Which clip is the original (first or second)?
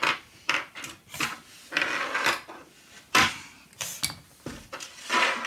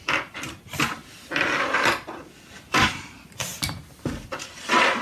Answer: first